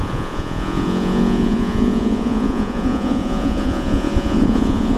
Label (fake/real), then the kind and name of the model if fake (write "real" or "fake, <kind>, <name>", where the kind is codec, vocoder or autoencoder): fake, vocoder, Vocos